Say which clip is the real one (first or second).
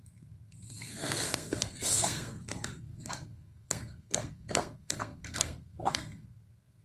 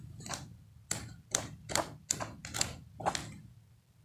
second